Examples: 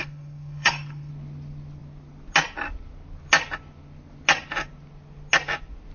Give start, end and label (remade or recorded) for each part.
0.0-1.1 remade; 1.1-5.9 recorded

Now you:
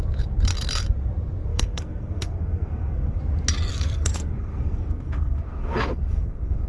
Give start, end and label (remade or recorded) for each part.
0.0-1.5 recorded; 1.5-3.2 remade; 3.2-3.7 recorded; 3.7-6.7 remade

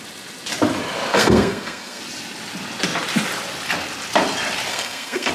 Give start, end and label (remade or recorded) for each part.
0.0-1.1 recorded; 1.1-2.0 remade; 2.0-4.7 recorded; 4.7-5.3 remade

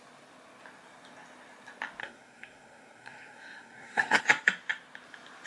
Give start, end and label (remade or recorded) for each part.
0.0-2.0 recorded; 2.0-4.2 remade; 4.2-5.5 recorded

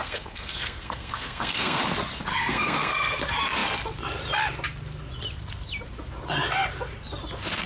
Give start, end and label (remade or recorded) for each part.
0.0-1.8 remade; 1.8-2.3 recorded; 2.3-3.2 remade; 3.2-7.7 recorded

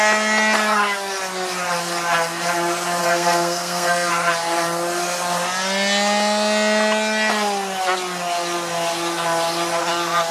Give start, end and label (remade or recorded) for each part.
0.0-3.0 recorded; 3.0-4.1 remade; 4.1-10.3 recorded